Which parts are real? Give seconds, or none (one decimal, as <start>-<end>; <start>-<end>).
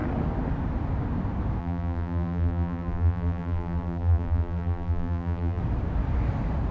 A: 0.0-1.6; 5.6-6.7